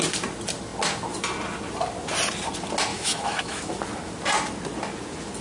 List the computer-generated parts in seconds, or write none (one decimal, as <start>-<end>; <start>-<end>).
2.9-3.7